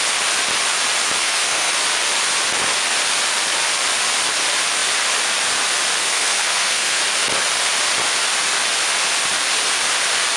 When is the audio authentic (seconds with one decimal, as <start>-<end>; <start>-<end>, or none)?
0.0-1.2; 1.7-6.0; 7.0-10.4